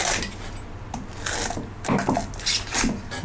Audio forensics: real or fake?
real